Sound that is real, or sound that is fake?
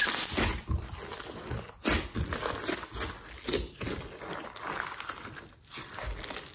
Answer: real